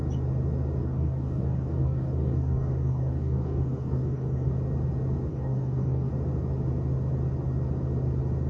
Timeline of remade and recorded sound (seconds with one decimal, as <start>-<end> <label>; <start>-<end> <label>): 0.0-0.8 recorded; 0.8-4.5 remade; 4.5-5.3 recorded; 5.3-6.1 remade; 6.1-8.5 recorded